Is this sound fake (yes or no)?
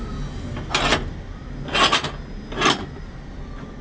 no